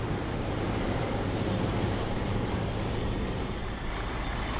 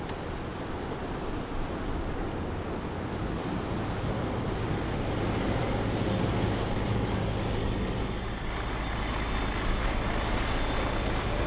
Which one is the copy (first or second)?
first